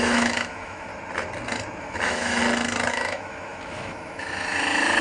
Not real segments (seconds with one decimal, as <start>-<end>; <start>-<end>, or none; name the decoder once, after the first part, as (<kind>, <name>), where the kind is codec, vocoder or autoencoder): 0.0-0.9 (autoencoder, DAC-VAE); 1.8-2.4; 2.9-5.0